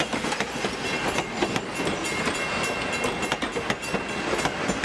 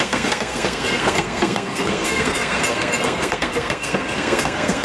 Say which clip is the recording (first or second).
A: first